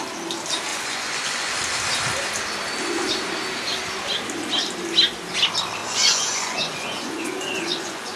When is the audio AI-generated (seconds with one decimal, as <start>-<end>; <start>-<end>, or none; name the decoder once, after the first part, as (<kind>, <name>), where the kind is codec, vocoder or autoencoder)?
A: 0.7-1.5 (vocoder, Vocos); 5.8-8.2